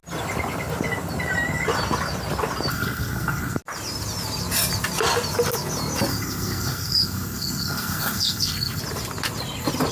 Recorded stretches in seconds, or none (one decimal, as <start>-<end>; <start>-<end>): 0.0-2.7; 3.6-6.1; 8.8-9.9